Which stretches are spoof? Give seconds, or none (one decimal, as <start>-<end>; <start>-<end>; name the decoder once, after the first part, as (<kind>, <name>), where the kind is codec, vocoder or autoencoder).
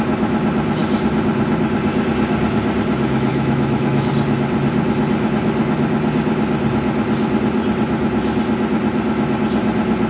3.3-4.1 (autoencoder, DAC-VAE)